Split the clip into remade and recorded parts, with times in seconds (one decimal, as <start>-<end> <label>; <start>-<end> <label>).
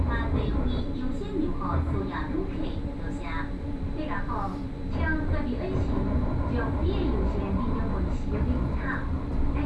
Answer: 0.0-9.7 recorded